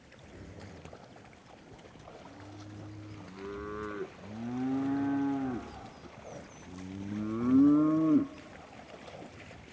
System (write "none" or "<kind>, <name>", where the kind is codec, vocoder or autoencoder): none